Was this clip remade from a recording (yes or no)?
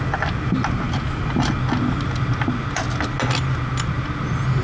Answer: no